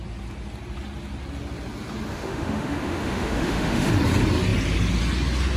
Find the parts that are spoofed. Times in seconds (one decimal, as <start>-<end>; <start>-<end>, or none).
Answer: 2.1-3.9